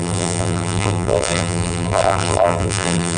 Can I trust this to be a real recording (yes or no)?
no